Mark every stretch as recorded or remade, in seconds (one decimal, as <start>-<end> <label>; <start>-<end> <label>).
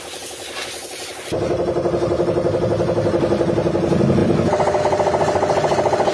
0.0-6.1 recorded